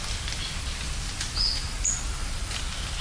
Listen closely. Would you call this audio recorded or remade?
recorded